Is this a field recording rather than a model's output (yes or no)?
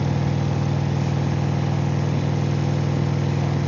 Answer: yes